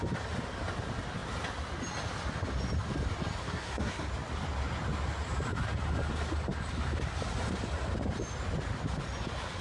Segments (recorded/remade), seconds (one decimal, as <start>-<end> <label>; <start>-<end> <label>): 0.0-3.4 recorded; 3.4-4.1 remade; 4.1-9.6 recorded

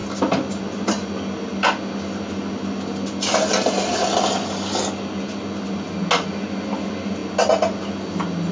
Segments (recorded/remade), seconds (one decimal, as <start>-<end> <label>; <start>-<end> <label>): 0.0-8.5 recorded